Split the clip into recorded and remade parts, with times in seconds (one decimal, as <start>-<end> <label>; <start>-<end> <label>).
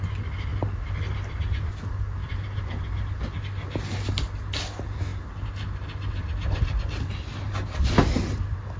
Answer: 0.0-8.8 recorded